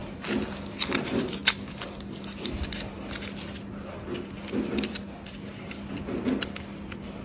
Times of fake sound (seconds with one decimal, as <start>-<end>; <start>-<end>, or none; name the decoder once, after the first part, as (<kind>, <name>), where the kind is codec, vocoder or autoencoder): none